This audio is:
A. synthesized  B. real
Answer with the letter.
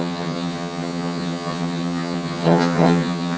A